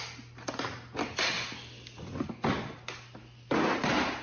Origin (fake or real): real